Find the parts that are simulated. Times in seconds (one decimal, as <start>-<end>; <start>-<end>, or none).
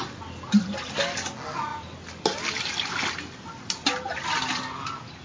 none